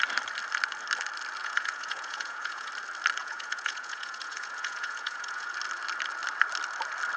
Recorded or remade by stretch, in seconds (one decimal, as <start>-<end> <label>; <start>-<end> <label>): 0.0-1.4 recorded; 1.4-2.7 remade; 2.7-3.2 recorded; 3.2-5.5 remade; 5.5-7.2 recorded